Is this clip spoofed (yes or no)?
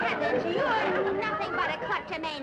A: no